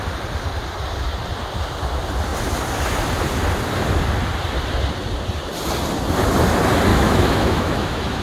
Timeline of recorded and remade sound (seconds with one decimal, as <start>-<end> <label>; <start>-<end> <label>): 0.0-6.9 recorded; 6.9-8.2 remade